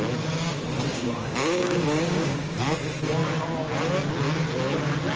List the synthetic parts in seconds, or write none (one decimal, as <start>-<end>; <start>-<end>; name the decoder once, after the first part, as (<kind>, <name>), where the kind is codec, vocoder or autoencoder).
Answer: 0.9-2.7 (codec, DAC)